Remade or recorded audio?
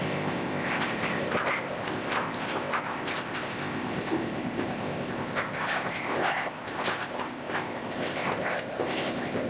remade